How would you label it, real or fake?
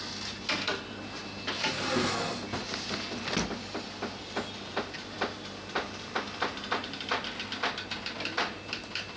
real